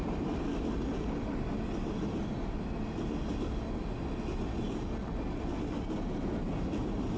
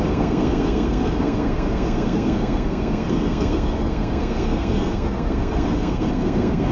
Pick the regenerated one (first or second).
second